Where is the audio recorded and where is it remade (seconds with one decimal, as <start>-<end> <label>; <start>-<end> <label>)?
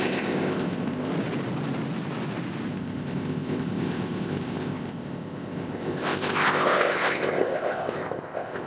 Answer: 0.0-1.1 remade; 1.1-2.7 recorded; 2.7-8.7 remade